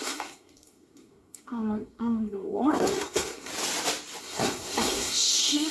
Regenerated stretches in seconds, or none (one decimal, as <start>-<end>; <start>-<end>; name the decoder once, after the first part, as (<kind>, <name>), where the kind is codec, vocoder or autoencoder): 0.0-3.5 (codec, SNAC); 4.2-5.7